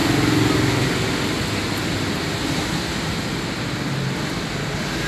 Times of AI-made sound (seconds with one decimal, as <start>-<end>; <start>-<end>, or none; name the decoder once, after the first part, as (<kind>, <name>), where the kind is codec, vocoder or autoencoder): none